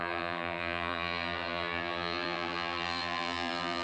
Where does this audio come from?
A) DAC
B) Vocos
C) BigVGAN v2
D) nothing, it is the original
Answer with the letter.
C